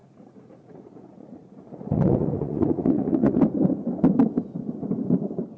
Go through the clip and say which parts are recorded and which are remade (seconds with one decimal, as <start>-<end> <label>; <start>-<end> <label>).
0.0-3.4 remade; 3.4-5.6 recorded